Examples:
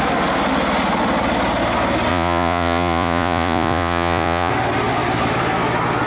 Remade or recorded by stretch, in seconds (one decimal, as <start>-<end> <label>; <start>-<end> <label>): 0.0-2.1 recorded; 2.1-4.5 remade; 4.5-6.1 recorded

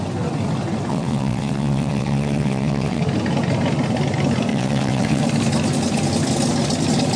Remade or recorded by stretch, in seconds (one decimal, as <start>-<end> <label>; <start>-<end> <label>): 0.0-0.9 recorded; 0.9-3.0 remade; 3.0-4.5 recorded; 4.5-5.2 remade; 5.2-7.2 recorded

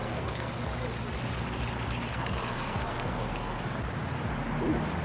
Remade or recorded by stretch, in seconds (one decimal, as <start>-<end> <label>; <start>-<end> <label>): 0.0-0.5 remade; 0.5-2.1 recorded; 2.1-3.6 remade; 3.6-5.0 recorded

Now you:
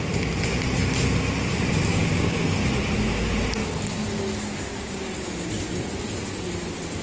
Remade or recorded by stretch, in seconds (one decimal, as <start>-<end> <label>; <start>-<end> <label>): 0.0-1.9 recorded; 1.9-2.6 remade; 2.6-4.7 recorded; 4.7-5.5 remade; 5.5-7.0 recorded

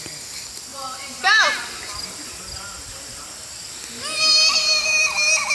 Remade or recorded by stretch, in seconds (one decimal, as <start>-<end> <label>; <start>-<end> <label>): 0.0-0.7 recorded; 0.7-2.4 remade; 2.4-2.9 recorded; 2.9-3.5 remade; 3.5-5.5 recorded

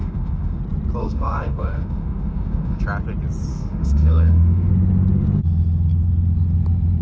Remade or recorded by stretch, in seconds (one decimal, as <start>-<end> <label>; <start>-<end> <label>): 0.0-0.6 remade; 0.6-1.0 recorded; 1.0-2.8 remade; 2.8-3.5 recorded; 3.5-4.7 remade; 4.7-7.0 recorded